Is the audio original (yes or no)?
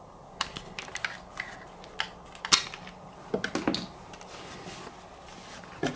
yes